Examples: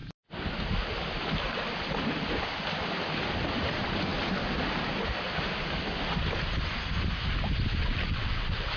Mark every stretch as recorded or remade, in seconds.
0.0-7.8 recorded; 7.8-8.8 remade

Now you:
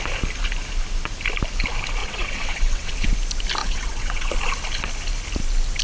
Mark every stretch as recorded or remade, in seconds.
0.0-2.0 recorded; 2.0-3.1 remade; 3.1-3.6 recorded; 3.6-4.3 remade; 4.3-5.8 recorded